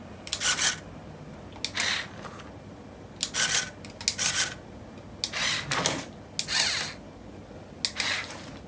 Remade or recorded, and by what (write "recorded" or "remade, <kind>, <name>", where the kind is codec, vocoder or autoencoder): recorded